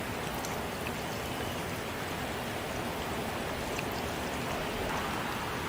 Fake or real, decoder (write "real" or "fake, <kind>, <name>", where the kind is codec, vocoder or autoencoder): real